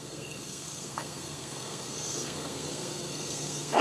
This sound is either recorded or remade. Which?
remade